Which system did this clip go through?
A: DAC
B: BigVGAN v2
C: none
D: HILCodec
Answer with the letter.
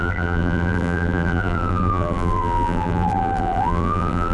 B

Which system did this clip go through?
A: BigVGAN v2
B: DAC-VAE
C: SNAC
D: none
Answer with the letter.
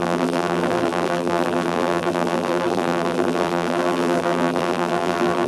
A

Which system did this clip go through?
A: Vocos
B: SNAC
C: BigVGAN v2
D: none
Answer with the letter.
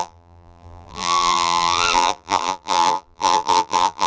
C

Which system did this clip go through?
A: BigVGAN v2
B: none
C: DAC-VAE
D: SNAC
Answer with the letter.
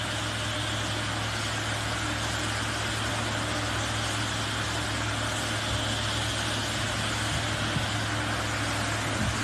B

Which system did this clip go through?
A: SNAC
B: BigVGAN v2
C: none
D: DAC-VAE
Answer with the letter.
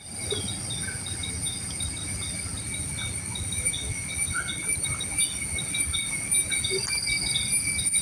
C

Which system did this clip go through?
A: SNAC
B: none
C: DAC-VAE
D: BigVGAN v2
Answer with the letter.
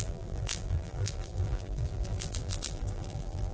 D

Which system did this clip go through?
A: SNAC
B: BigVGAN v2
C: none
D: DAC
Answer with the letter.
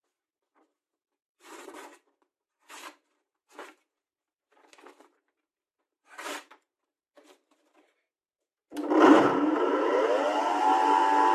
B